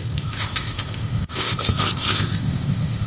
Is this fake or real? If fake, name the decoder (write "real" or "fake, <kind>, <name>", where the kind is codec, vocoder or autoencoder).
fake, codec, ZipCodec